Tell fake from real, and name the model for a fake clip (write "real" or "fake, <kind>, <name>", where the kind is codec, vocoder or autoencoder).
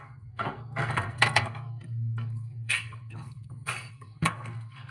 fake, codec, SNAC